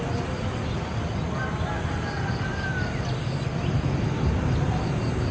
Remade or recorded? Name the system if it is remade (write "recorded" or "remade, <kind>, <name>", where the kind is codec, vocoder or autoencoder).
recorded